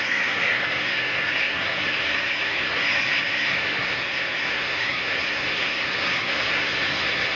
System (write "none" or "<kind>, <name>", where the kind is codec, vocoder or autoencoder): codec, SNAC